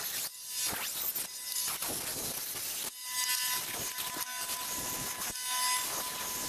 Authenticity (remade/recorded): recorded